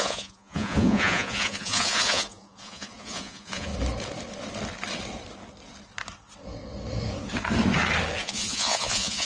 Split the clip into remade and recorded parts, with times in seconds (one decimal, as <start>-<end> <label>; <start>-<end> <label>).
0.0-3.7 remade; 3.7-8.2 recorded; 8.2-9.2 remade